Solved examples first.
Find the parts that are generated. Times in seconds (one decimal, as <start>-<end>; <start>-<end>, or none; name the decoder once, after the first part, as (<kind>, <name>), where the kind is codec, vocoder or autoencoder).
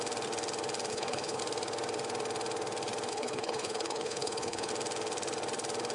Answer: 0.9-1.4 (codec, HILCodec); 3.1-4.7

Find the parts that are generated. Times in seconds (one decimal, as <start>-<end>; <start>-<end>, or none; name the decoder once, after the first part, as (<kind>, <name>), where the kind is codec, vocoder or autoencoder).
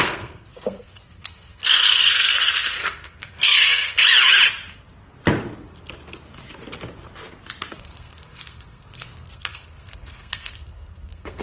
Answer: 0.0-4.0 (codec, SNAC); 7.7-11.4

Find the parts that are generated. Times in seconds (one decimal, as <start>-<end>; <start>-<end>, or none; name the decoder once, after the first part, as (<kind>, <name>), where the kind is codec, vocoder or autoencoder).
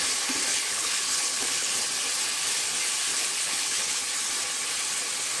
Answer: 0.5-1.7 (codec, HILCodec); 3.1-4.0